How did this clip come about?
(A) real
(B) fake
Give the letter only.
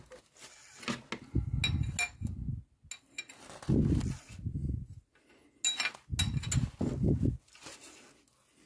A